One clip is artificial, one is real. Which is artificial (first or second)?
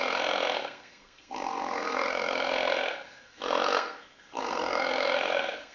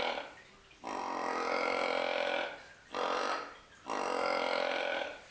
first